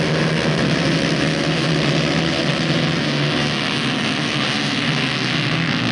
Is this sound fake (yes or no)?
no